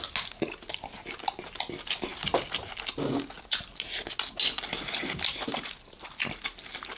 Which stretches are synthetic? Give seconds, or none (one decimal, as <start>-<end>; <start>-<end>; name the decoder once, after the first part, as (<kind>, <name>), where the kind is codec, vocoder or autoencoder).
none